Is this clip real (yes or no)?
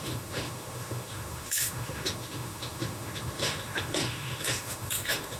no